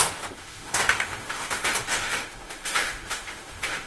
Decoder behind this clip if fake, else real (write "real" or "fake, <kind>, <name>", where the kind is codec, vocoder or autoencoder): fake, autoencoder, DAC-VAE